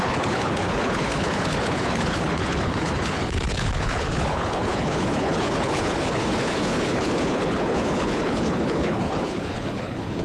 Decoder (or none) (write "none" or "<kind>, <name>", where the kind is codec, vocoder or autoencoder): codec, HILCodec